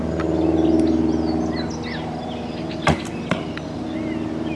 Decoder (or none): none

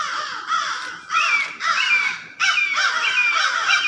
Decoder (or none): none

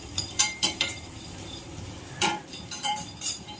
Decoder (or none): vocoder, BigVGAN v2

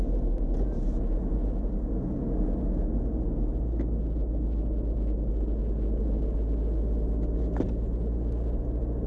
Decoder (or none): none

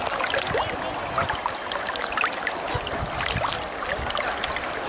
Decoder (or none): none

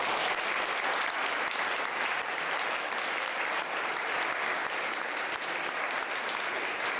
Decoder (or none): vocoder, BigVGAN v2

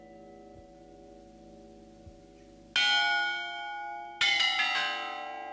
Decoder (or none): none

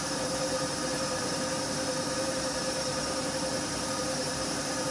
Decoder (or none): vocoder, BigVGAN v2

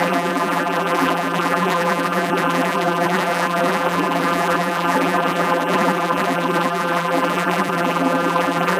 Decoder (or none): vocoder, BigVGAN v2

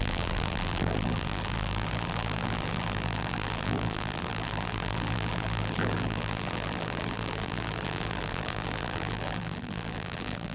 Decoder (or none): vocoder, BigVGAN v2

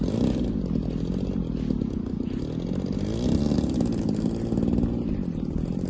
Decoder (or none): none